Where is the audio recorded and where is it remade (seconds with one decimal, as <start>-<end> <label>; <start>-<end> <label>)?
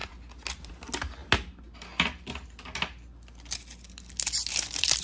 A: 0.0-5.0 recorded